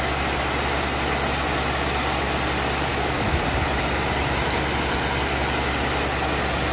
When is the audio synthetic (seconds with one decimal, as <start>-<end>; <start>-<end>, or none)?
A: 2.9-3.4